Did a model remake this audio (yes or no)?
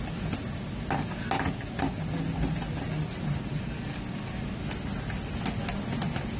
no